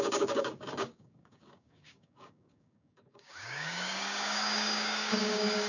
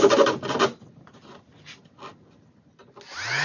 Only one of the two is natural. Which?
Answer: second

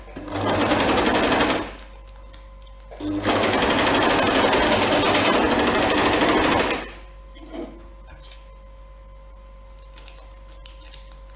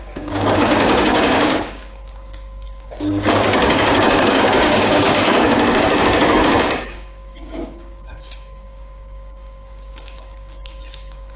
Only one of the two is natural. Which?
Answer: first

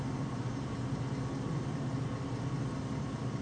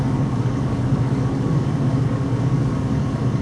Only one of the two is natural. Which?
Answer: first